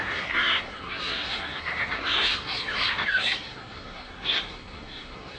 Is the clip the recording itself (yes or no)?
no